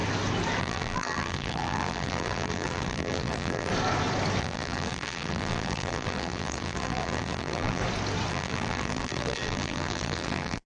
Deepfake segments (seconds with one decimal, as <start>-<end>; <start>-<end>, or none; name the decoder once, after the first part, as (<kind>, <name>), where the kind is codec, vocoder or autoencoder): 0.6-3.7 (vocoder, BigVGAN v2); 4.4-7.8; 8.3-10.7